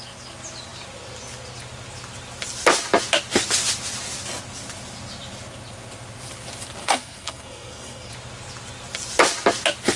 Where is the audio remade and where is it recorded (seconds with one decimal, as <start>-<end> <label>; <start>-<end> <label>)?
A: 0.0-6.8 recorded; 6.8-8.1 remade; 8.1-10.0 recorded